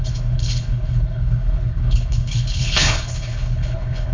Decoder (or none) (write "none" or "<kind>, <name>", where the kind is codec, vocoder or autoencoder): codec, HILCodec